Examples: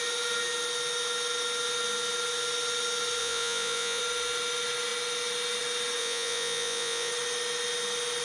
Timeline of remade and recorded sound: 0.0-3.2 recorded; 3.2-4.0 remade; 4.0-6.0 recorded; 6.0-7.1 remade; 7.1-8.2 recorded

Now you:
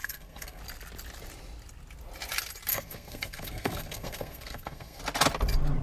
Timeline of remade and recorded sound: 0.0-0.6 remade; 0.6-2.7 recorded; 2.7-5.0 remade; 5.0-5.8 recorded

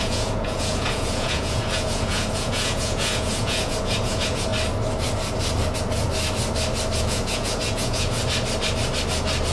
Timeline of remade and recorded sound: 0.0-4.5 remade; 4.5-7.0 recorded; 7.0-8.2 remade; 8.2-9.5 recorded

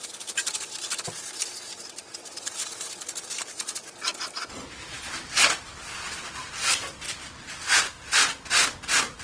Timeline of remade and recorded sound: 0.0-9.2 recorded

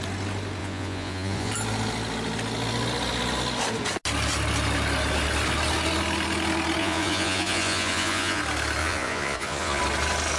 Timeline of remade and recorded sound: 0.0-0.6 recorded; 0.6-1.5 remade; 1.5-6.8 recorded; 6.8-8.4 remade; 8.4-8.8 recorded; 8.8-9.8 remade; 9.8-10.4 recorded

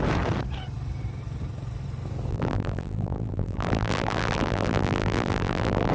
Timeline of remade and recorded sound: 0.0-2.3 recorded; 2.3-5.9 remade

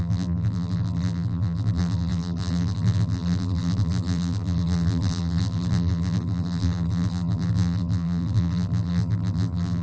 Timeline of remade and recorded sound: 0.0-9.8 remade

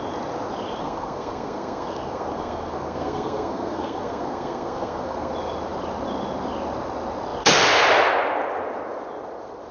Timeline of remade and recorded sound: 0.0-0.8 recorded; 0.8-5.3 remade; 5.3-9.7 recorded